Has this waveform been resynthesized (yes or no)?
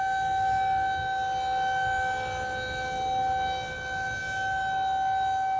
no